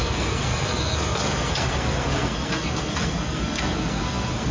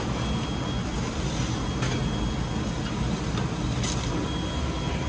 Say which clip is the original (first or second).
second